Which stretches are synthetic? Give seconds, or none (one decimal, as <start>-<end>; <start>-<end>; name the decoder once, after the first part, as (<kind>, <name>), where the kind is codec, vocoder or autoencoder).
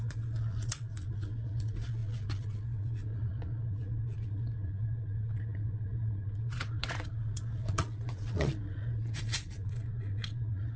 0.0-10.8 (vocoder, Vocos)